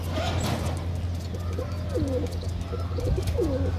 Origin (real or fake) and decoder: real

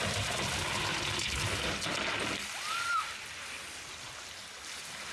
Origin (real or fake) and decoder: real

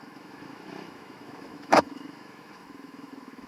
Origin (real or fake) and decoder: fake, autoencoder, DAC-VAE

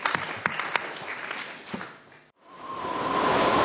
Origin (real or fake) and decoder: real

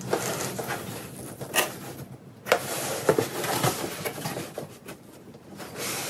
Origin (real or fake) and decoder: real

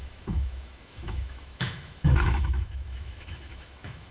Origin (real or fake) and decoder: fake, autoencoder, DAC-VAE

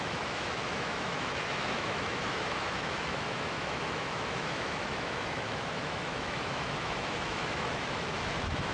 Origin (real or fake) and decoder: fake, autoencoder, DAC-VAE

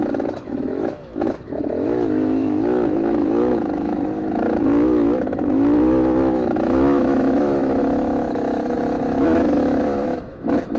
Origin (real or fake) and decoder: fake, autoencoder, DAC-VAE